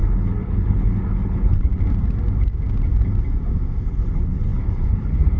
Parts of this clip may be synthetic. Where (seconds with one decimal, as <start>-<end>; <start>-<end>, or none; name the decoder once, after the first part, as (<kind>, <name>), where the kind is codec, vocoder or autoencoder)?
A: 0.0-1.7 (codec, HILCodec); 3.9-5.4